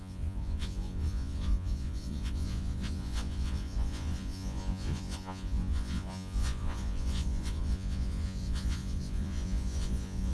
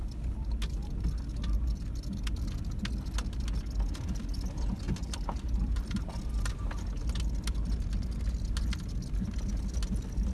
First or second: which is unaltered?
second